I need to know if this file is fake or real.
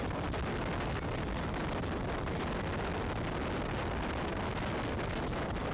real